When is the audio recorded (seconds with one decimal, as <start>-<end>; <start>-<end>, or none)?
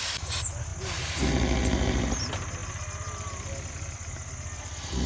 0.0-5.1